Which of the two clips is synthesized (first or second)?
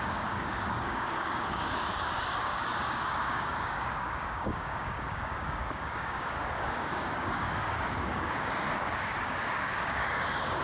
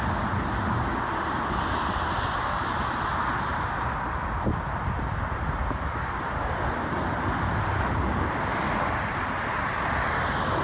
first